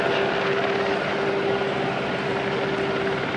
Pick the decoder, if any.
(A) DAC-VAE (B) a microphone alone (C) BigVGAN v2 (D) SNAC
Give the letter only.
B